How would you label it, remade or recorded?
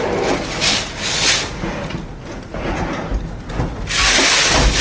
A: recorded